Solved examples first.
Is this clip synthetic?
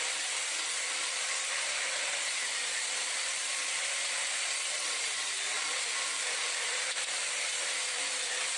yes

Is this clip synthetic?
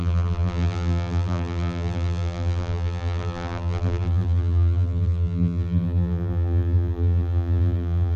yes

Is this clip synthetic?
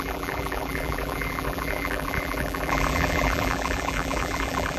yes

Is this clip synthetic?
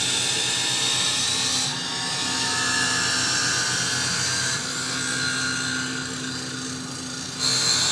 no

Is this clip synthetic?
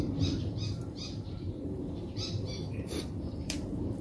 yes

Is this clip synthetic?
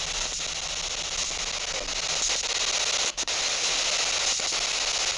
no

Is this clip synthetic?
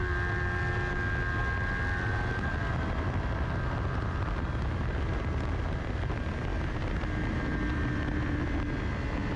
no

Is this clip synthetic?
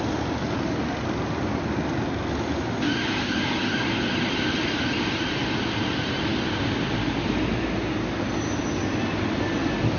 no